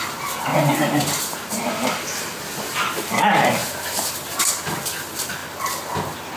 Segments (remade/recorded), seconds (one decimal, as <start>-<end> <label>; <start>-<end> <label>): 0.0-0.5 recorded; 0.5-1.6 remade; 1.6-3.6 recorded; 3.6-4.5 remade; 4.5-6.4 recorded